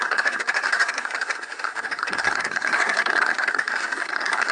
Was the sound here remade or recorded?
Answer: remade